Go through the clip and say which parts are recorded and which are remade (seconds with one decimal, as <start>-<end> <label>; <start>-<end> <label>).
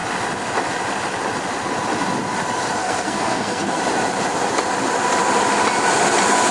0.0-2.8 recorded; 2.8-3.8 remade; 3.8-6.5 recorded